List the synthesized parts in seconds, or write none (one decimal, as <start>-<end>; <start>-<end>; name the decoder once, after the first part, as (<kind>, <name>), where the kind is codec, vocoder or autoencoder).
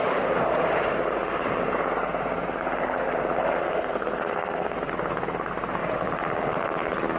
3.6-4.9 (codec, SNAC)